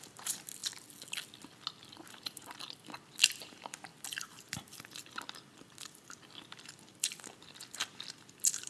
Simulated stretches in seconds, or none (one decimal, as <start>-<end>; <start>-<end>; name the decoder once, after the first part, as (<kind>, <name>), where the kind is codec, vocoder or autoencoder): 0.0-0.6 (vocoder, BigVGAN v2); 2.1-8.7